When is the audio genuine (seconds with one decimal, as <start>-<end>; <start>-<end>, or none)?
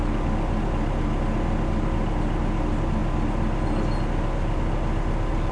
0.0-5.5